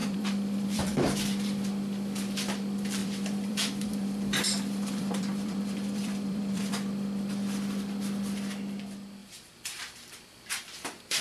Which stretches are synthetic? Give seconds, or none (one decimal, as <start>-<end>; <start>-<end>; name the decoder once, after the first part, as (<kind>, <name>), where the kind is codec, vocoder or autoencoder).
0.0-1.7 (vocoder, BigVGAN v2); 3.0-6.7; 9.2-10.1